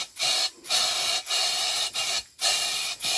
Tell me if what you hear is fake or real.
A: real